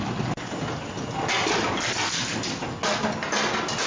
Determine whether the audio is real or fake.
real